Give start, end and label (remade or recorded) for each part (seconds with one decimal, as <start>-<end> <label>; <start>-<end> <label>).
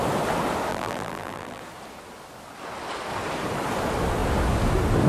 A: 0.0-0.7 recorded; 0.7-1.6 remade; 1.6-5.1 recorded